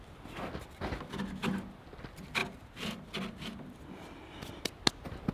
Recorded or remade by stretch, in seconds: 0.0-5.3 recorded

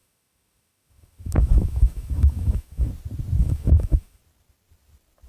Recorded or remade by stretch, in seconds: 0.0-2.9 remade; 2.9-3.4 recorded; 3.4-4.2 remade; 4.2-5.3 recorded

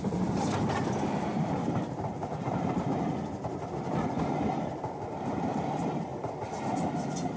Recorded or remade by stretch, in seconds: 0.0-1.3 recorded; 1.3-2.8 remade; 2.8-7.4 recorded